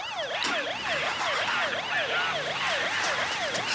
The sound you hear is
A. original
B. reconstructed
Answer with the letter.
A